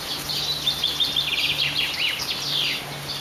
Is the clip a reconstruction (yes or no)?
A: no